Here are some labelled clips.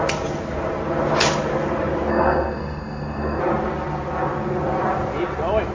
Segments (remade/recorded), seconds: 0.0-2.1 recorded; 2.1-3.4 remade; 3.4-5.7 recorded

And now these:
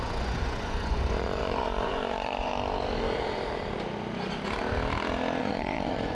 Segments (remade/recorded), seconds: 0.0-2.5 remade; 2.5-5.4 recorded; 5.4-6.1 remade

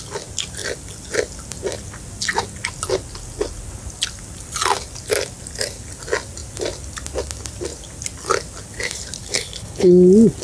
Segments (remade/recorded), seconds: 0.0-9.2 recorded; 9.2-9.9 remade; 9.9-10.4 recorded

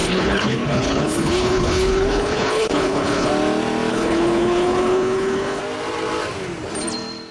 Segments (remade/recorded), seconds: 0.0-3.3 remade; 3.3-3.9 recorded; 3.9-5.6 remade; 5.6-7.3 recorded

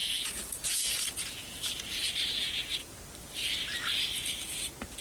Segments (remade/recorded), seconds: 0.0-3.0 remade; 3.0-5.0 recorded

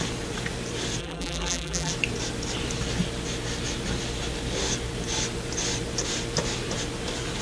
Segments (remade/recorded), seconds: 0.0-1.0 recorded; 1.0-1.9 remade; 1.9-7.4 recorded